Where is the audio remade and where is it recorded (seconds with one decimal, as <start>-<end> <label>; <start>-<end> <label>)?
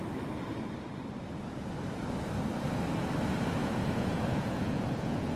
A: 0.0-3.6 recorded; 3.6-5.4 remade